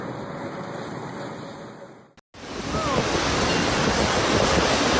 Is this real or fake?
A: real